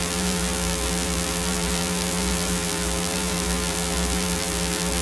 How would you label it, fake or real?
fake